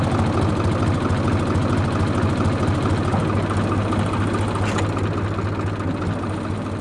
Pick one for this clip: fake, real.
real